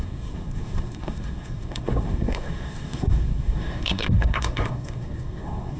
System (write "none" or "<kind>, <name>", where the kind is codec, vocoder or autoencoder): codec, SNAC